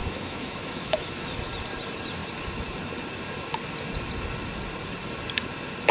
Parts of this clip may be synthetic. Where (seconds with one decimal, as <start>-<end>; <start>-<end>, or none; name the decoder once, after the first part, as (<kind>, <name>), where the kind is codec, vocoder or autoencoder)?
0.0-1.4 (autoencoder, DAC-VAE)